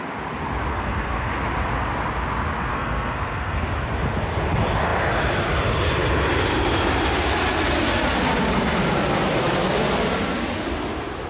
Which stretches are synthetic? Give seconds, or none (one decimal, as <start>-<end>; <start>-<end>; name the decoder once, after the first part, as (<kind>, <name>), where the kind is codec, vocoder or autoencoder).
0.7-1.3 (codec, SNAC); 2.7-3.6